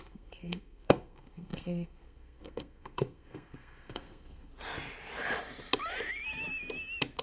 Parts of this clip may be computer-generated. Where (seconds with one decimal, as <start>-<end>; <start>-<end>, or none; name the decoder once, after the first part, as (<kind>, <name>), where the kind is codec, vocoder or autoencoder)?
0.0-4.5 (codec, SNAC)